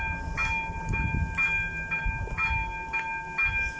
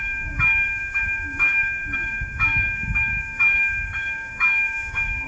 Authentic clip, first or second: first